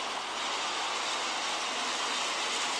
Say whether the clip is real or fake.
real